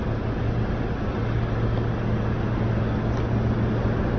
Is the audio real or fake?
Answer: real